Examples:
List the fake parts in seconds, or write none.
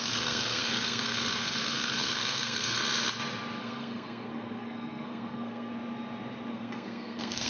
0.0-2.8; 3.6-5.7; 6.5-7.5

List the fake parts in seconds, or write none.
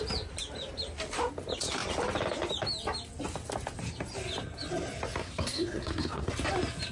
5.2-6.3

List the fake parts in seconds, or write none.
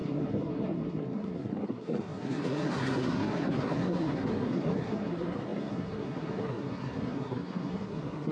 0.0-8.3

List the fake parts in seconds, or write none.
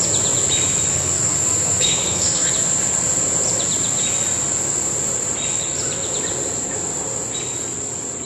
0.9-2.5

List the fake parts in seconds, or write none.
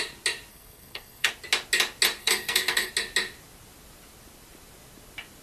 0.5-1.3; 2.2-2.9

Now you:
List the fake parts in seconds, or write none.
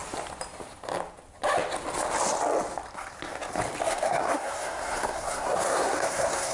3.9-6.5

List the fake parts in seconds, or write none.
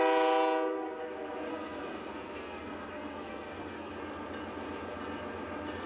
1.5-3.9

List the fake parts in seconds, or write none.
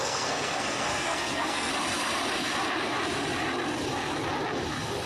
0.0-1.7